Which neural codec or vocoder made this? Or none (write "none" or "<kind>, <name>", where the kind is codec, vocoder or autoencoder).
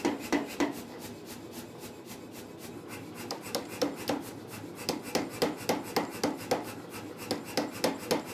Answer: none